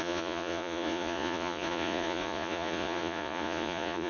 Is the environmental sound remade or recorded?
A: remade